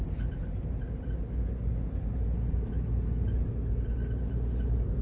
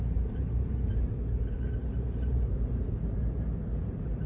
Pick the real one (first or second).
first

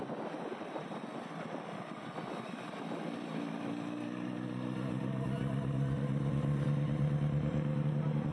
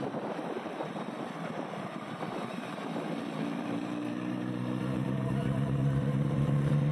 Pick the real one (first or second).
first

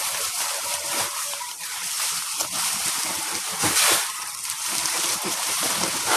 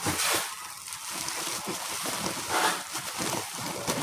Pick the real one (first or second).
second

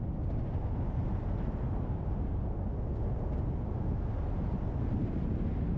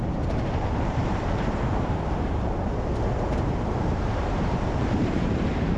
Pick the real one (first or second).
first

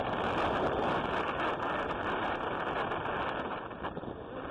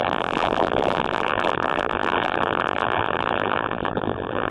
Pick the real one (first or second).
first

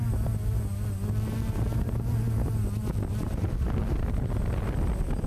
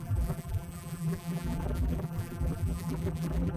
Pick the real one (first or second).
first